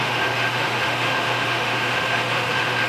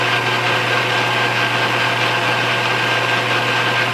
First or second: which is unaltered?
second